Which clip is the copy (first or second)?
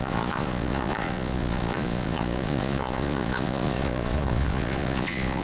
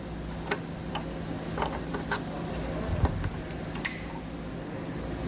first